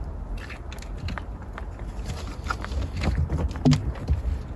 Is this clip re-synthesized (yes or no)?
no